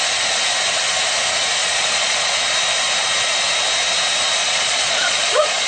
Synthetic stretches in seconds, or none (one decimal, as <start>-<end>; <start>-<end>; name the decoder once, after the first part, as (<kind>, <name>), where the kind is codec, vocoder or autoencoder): 1.6-2.4 (vocoder, Vocos); 4.4-5.7